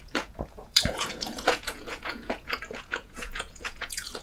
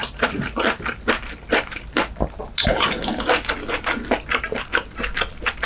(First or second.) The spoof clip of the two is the first